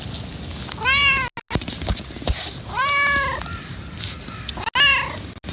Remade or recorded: recorded